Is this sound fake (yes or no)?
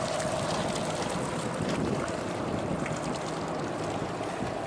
yes